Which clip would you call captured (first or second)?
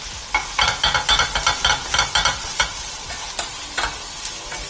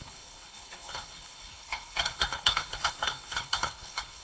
first